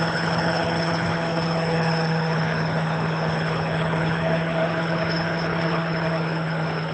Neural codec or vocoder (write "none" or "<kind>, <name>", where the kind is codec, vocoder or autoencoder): codec, HILCodec